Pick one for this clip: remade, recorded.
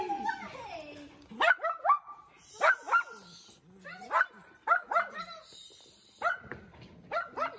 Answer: recorded